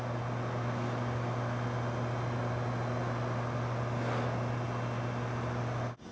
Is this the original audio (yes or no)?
yes